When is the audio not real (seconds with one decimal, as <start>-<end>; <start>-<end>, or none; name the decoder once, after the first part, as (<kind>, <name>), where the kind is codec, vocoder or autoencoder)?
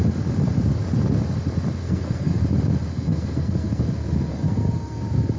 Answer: 1.8-2.4 (codec, SNAC); 2.9-3.8; 4.3-5.0